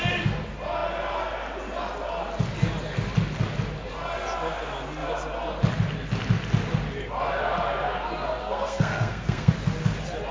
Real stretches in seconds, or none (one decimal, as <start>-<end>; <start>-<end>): 0.0-8.4; 9.5-10.3